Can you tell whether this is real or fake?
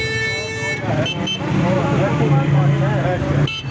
real